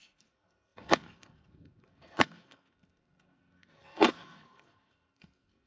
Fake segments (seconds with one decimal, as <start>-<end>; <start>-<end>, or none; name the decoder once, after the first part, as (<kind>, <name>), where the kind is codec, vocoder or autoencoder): 0.0-5.7 (codec, SNAC)